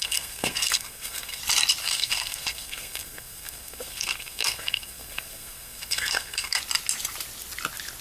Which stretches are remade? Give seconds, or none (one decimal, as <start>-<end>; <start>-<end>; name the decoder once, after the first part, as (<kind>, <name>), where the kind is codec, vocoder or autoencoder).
0.0-1.4 (codec, SNAC); 1.8-6.6